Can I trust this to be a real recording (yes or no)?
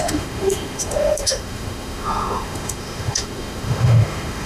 no